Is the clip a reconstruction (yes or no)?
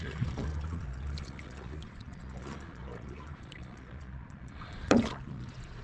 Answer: yes